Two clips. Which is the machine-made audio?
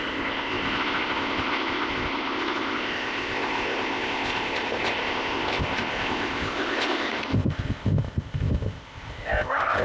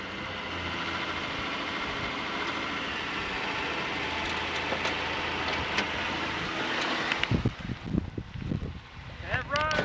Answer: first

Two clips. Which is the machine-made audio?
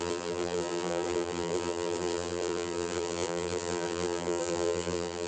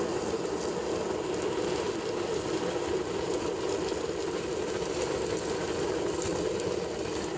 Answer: first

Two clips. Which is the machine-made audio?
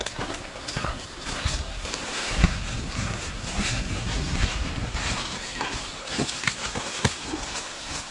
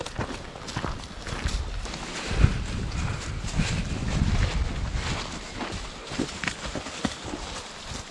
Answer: first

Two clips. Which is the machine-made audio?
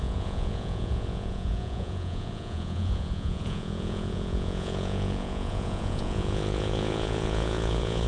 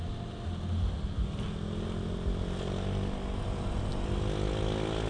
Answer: first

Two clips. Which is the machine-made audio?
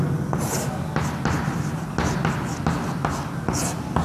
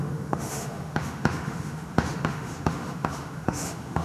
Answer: second